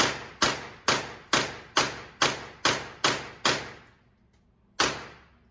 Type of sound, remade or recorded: recorded